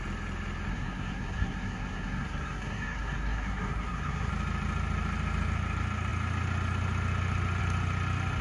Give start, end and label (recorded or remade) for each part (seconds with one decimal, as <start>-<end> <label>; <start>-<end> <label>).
0.0-0.7 recorded; 0.7-4.3 remade; 4.3-8.4 recorded